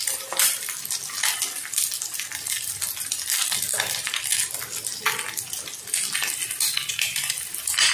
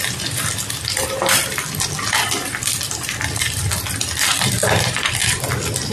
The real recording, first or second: first